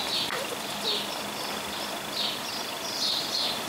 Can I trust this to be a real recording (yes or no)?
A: yes